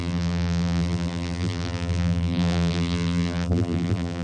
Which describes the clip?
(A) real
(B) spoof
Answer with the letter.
B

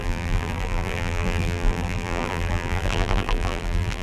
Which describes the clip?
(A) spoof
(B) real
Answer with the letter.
A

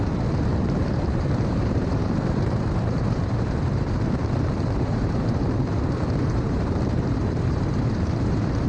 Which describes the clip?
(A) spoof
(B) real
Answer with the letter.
A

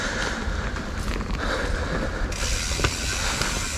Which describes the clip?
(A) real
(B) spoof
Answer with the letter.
A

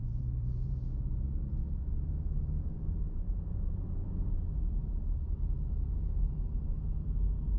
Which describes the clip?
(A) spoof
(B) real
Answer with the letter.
A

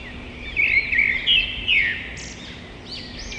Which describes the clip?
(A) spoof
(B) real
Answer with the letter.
B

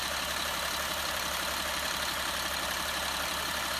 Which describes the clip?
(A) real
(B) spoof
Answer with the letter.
B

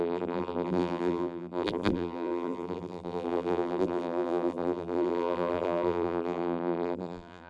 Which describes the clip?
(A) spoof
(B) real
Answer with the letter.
A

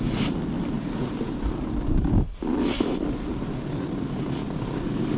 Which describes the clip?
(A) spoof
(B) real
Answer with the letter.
B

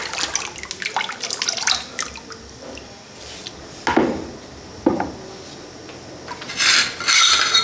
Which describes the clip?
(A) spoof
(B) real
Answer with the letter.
B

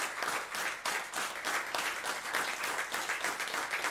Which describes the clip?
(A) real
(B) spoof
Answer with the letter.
A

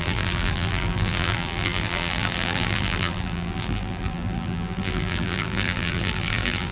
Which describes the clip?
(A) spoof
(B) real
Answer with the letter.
A